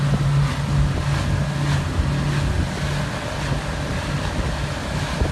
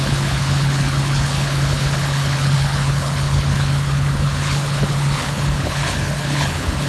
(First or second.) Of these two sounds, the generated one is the second